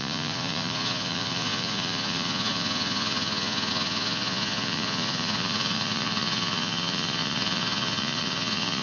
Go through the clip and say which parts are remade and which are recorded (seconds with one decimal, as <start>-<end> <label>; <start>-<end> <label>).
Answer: 0.0-8.8 remade